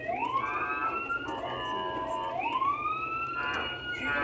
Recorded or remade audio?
recorded